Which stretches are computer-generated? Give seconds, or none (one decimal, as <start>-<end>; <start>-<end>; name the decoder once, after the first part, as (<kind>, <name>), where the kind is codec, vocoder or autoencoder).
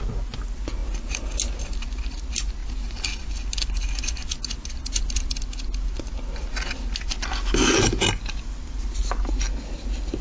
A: none